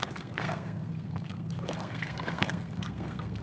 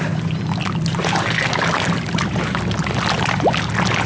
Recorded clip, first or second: second